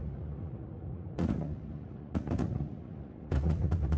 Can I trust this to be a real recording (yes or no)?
no